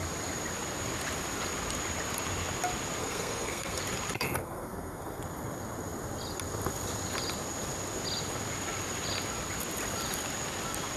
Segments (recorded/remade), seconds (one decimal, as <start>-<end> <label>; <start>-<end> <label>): 0.0-3.0 recorded; 3.0-3.8 remade; 3.8-4.4 recorded; 4.4-5.2 remade; 5.2-11.0 recorded